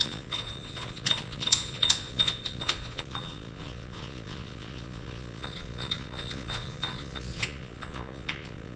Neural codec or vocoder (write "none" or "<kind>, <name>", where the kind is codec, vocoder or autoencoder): vocoder, Vocos